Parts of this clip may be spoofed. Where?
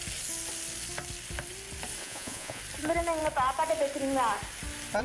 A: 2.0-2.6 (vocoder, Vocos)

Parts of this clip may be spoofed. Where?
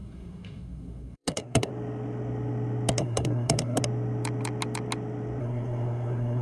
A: 0.0-1.7 (codec, SNAC); 3.0-3.8; 5.4-6.4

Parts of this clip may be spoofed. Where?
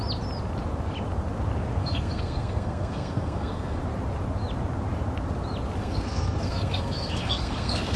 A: 1.8-3.8 (codec, SNAC); 5.8-8.0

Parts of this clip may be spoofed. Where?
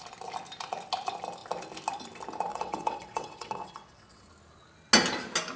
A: 2.5-4.3 (vocoder, WaveNeXt)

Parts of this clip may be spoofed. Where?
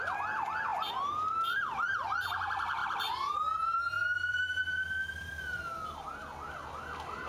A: 0.0-0.7 (vocoder, BigVGAN v2); 1.3-4.6; 6.5-7.3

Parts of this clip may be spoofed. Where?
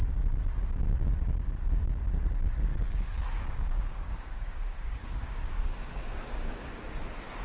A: 2.7-6.7 (codec, DAC)